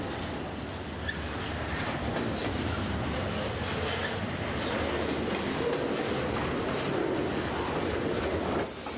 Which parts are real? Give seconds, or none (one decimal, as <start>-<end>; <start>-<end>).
0.0-2.4; 3.3-9.0